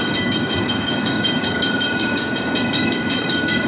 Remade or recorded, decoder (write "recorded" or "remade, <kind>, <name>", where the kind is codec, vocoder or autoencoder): remade, codec, DAC